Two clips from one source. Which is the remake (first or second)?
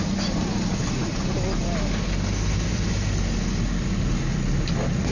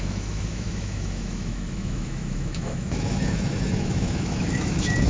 second